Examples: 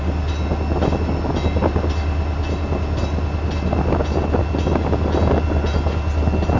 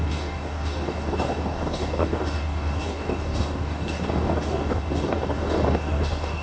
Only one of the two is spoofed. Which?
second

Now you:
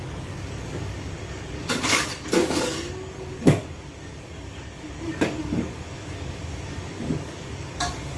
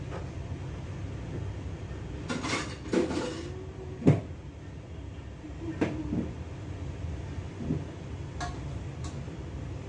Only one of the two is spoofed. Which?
first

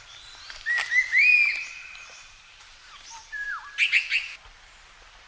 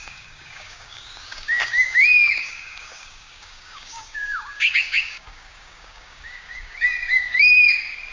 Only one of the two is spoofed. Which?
second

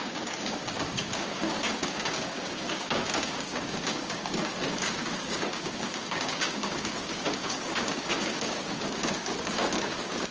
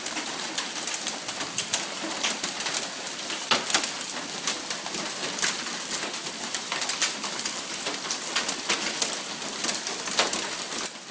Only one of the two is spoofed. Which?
first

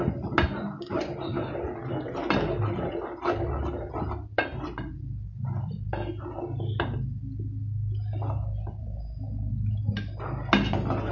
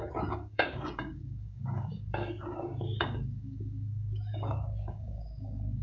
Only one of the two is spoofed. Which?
second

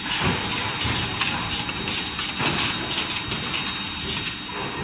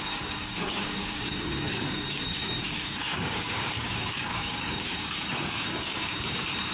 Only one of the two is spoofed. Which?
second